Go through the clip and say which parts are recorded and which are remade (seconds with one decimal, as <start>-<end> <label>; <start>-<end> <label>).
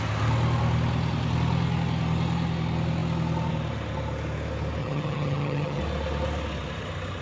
0.0-4.8 recorded; 4.8-5.8 remade; 5.8-7.2 recorded